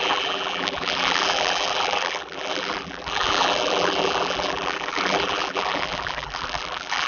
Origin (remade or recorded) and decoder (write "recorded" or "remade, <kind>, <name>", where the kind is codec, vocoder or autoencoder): remade, vocoder, BigVGAN v2